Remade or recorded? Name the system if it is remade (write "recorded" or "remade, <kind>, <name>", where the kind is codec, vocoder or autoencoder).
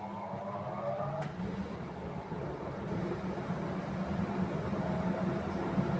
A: recorded